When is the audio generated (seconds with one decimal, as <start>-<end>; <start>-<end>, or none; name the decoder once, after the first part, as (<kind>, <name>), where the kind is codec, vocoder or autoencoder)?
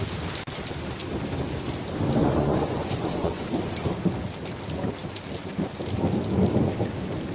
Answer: 2.2-3.4 (vocoder, Vocos)